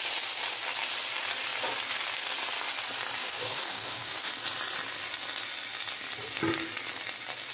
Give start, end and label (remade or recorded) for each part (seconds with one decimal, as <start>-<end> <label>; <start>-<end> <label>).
0.0-3.2 recorded; 3.2-4.3 remade; 4.3-7.5 recorded